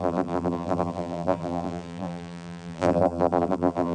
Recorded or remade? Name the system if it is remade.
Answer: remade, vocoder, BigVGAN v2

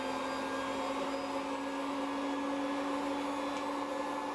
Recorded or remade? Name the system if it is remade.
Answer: recorded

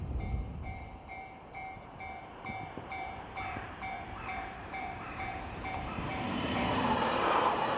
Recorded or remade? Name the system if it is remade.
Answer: remade, vocoder, BigVGAN v2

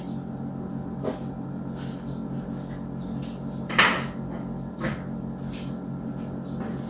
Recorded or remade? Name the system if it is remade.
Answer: recorded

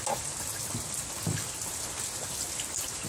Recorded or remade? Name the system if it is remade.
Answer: recorded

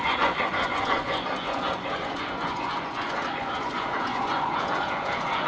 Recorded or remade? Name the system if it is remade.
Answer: remade, vocoder, Vocos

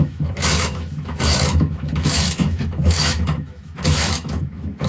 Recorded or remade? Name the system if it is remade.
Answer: remade, autoencoder, DAC-VAE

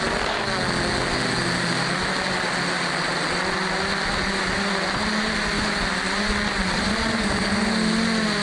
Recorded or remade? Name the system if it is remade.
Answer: recorded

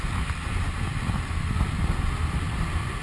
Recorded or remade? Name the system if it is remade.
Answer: recorded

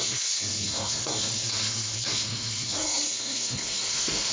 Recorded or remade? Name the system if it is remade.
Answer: remade, codec, SNAC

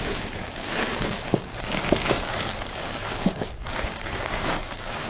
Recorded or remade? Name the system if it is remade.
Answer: remade, codec, DAC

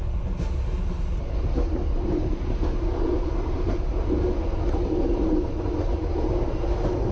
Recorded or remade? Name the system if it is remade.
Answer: recorded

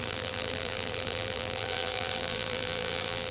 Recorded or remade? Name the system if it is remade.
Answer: remade, vocoder, BigVGAN v2